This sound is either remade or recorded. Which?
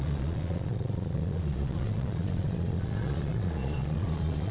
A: remade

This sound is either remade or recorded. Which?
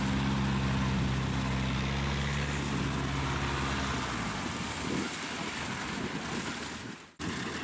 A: recorded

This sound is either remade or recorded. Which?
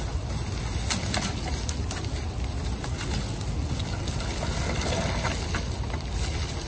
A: recorded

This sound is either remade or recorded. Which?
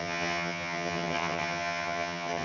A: remade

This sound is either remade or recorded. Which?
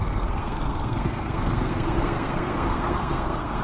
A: remade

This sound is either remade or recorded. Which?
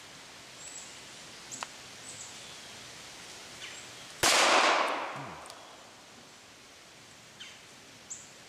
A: recorded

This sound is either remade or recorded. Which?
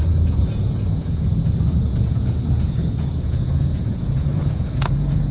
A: remade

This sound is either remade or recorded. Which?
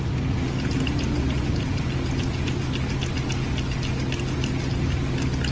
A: recorded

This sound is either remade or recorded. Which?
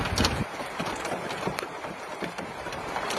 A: remade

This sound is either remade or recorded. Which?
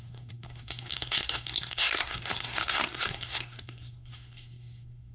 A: remade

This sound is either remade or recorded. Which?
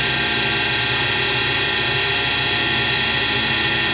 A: recorded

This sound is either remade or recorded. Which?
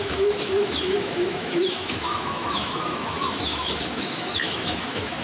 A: remade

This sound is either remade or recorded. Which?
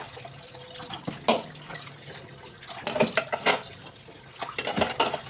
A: recorded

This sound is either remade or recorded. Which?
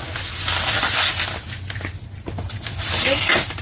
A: recorded